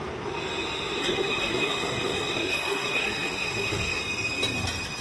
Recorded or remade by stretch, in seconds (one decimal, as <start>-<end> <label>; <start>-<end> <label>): 0.0-1.0 recorded; 1.0-4.0 remade; 4.0-5.0 recorded